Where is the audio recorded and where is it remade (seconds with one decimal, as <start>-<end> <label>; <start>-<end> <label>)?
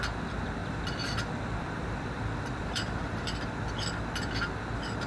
0.0-0.6 recorded; 0.6-2.8 remade; 2.8-5.1 recorded